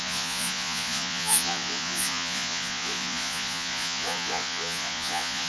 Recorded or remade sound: remade